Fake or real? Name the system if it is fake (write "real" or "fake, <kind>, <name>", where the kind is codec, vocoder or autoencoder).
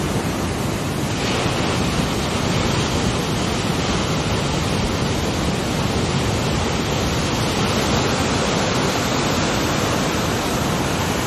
real